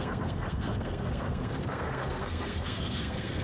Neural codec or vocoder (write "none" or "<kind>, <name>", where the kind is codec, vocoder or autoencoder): codec, SNAC